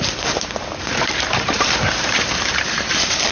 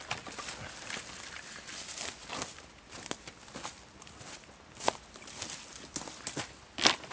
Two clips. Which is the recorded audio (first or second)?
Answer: second